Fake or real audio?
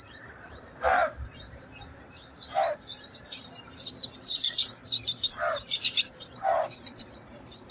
fake